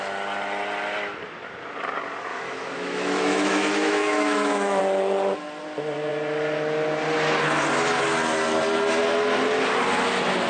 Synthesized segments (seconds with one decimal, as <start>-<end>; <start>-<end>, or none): 2.3-4.8